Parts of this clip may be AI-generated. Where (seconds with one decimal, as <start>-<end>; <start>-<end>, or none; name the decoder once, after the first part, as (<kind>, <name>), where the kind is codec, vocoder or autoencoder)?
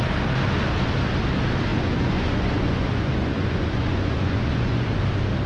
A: 1.7-5.0 (vocoder, Vocos)